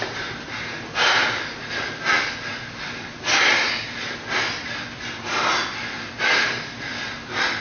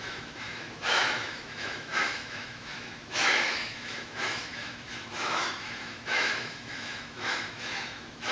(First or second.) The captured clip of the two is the first